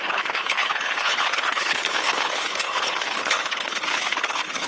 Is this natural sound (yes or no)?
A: no